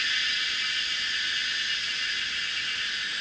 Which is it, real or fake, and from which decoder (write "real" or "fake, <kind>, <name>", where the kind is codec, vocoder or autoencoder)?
real